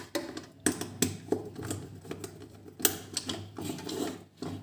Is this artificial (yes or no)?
no